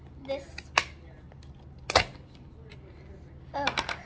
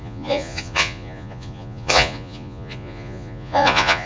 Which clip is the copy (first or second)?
second